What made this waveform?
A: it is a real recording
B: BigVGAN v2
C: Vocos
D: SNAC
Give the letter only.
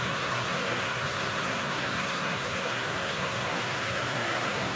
D